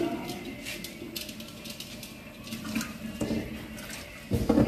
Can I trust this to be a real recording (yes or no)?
yes